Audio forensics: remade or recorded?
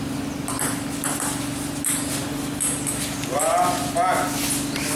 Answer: recorded